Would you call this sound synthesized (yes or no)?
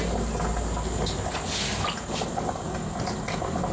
no